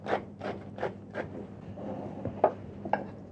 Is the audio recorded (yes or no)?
yes